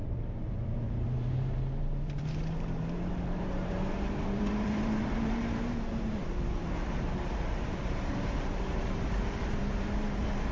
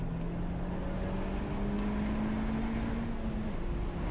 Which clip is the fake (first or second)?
first